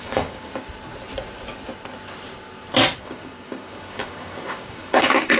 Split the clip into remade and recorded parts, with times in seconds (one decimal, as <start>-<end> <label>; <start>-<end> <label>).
0.0-0.5 remade; 0.5-3.0 recorded; 3.0-5.4 remade